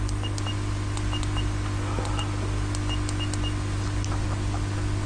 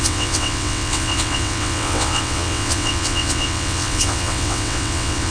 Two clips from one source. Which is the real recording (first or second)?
first